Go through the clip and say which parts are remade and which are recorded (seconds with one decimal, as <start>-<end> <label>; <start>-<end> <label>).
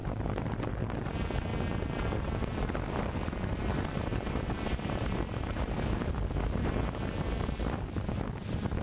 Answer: 0.0-1.1 remade; 1.1-3.5 recorded; 3.5-6.7 remade; 6.7-8.8 recorded